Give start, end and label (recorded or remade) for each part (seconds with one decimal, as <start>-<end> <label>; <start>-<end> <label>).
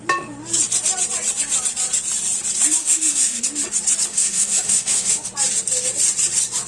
0.0-2.8 recorded; 2.8-3.4 remade; 3.4-4.1 recorded; 4.1-5.3 remade; 5.3-6.7 recorded